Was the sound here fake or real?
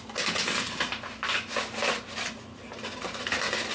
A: real